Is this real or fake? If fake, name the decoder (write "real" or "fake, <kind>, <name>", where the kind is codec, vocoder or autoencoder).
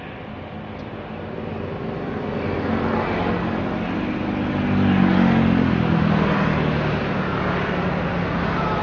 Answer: real